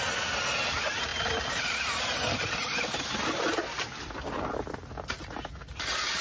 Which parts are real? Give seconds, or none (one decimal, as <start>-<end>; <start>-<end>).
0.0-6.2